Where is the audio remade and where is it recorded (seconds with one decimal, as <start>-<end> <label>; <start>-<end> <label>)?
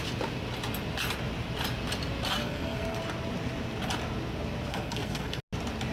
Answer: 0.0-2.4 recorded; 2.4-3.0 remade; 3.0-4.7 recorded; 4.7-5.4 remade; 5.4-5.9 recorded